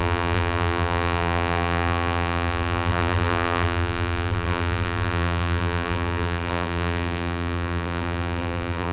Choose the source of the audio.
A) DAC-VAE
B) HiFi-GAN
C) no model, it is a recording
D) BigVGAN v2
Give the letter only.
D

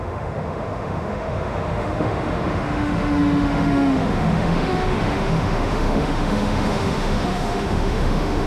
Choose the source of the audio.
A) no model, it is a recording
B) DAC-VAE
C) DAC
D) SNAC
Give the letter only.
B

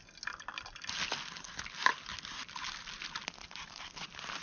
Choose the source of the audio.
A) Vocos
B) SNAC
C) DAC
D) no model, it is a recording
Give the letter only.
D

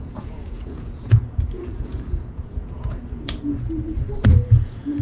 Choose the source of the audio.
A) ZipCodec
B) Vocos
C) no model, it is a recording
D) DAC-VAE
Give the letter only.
B